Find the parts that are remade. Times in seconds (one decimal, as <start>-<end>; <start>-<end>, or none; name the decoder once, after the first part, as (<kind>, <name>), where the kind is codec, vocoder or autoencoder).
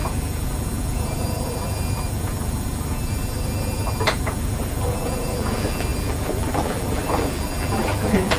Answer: 0.0-8.4 (vocoder, BigVGAN v2)